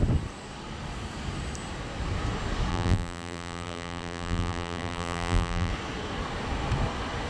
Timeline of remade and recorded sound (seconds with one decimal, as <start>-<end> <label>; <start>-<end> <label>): 0.0-2.7 recorded; 2.7-5.7 remade; 5.7-7.3 recorded